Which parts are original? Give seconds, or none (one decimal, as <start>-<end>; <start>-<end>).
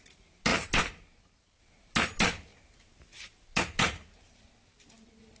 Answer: 0.0-5.4